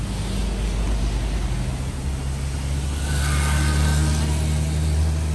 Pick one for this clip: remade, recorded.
recorded